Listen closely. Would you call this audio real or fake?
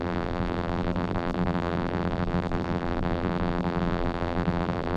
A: fake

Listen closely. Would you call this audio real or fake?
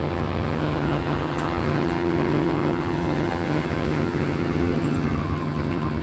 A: fake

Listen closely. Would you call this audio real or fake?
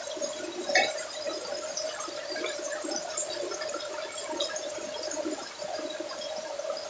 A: real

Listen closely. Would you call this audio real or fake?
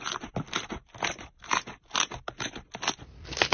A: real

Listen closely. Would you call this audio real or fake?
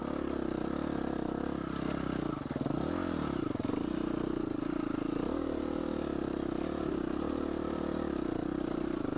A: real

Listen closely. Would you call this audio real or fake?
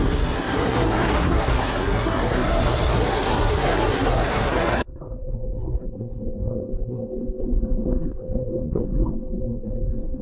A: fake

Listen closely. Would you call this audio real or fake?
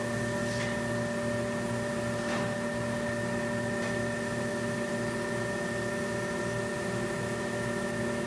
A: real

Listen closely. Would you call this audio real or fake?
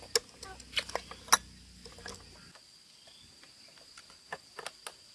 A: real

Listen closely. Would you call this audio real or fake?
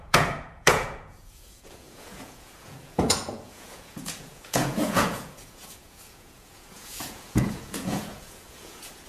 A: fake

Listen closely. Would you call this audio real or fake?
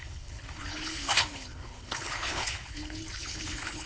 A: fake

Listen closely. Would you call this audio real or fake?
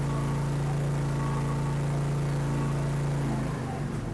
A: real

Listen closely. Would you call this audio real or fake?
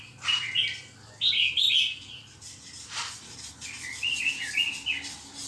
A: real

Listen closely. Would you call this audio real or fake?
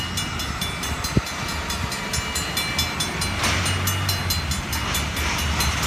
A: real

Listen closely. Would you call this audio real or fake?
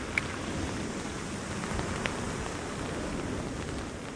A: real